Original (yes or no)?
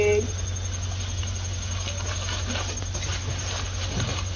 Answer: yes